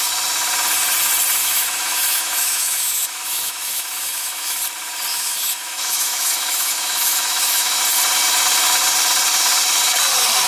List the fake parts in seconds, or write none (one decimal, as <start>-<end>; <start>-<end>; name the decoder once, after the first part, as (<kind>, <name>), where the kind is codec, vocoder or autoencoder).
1.4-4.6 (autoencoder, DAC-VAE); 5.1-7.8